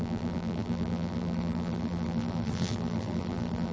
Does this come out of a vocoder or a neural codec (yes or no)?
yes